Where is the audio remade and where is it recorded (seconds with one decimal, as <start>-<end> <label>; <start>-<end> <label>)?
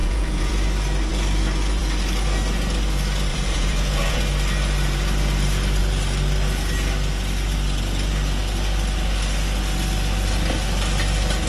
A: 0.0-0.5 remade; 0.5-3.3 recorded; 3.3-4.2 remade; 4.2-11.5 recorded